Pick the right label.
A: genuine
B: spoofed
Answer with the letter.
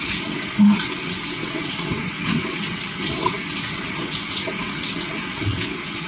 B